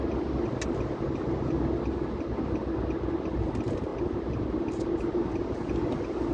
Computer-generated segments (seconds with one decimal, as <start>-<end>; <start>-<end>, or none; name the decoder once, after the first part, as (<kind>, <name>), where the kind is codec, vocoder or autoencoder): none